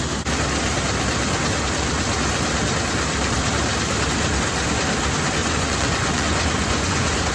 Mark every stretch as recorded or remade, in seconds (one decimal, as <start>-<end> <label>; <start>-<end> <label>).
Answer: 0.0-5.4 recorded; 5.4-7.3 remade

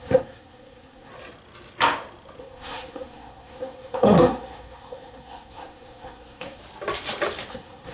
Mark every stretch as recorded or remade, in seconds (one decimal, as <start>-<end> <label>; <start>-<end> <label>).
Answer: 0.0-1.1 remade; 1.1-2.4 recorded; 2.4-6.6 remade; 6.6-7.5 recorded; 7.5-7.9 remade

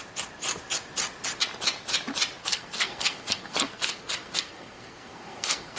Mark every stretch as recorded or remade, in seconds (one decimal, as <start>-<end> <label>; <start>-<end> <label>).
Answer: 0.0-2.4 recorded; 2.4-5.8 remade